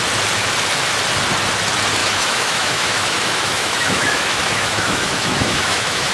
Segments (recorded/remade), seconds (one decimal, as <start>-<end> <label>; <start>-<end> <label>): 0.0-2.0 recorded; 2.0-6.1 remade